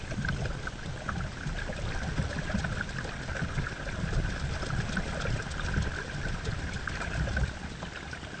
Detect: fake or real real